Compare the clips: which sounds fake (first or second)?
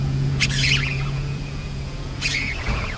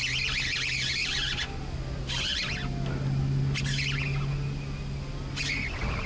first